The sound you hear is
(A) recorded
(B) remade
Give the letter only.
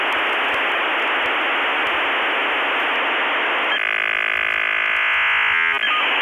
A